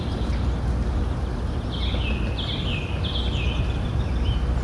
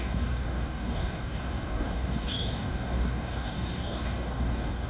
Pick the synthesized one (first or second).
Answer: second